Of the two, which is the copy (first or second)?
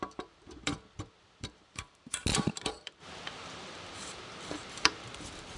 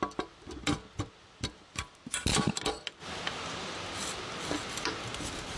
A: first